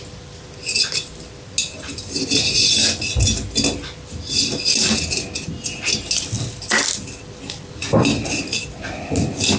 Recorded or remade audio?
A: recorded